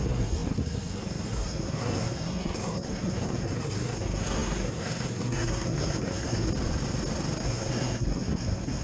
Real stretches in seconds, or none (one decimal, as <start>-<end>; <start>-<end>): 6.5-7.4